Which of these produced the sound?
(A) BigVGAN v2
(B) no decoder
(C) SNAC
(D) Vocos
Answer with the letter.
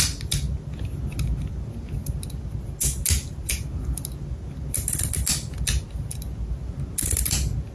B